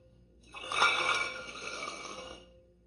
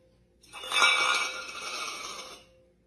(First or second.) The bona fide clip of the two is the second